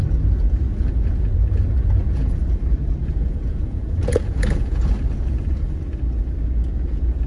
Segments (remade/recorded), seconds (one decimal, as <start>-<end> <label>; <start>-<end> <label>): 0.0-0.7 recorded; 0.7-2.4 remade; 2.4-3.0 recorded; 3.0-4.8 remade; 4.8-7.3 recorded